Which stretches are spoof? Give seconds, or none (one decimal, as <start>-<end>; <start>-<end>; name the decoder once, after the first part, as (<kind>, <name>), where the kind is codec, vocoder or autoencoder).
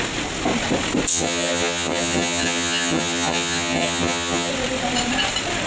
1.1-4.5 (vocoder, HiFi-GAN)